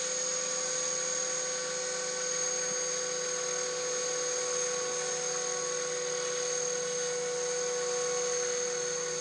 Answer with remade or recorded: recorded